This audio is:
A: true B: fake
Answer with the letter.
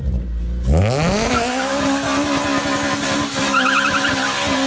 A